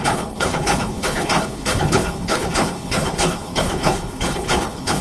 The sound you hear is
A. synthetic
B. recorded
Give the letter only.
A